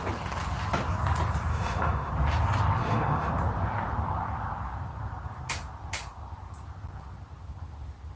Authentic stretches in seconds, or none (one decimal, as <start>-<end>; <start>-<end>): 0.0-1.5; 2.1-2.8; 3.3-8.2